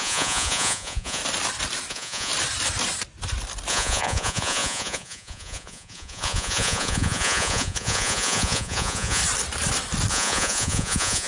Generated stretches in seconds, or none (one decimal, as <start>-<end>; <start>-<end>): 0.0-1.2; 1.9-2.3; 3.7-9.2; 10.1-11.3